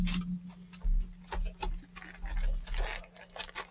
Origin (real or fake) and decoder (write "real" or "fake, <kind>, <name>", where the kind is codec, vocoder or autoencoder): real